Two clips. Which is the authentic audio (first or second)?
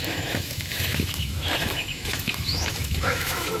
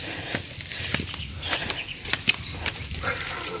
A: second